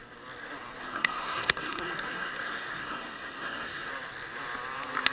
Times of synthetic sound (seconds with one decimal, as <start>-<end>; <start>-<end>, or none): 0.8-3.9